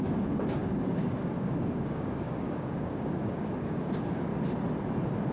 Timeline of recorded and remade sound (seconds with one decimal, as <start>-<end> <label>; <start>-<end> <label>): 0.0-4.3 remade; 4.3-5.3 recorded